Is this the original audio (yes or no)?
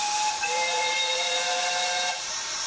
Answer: yes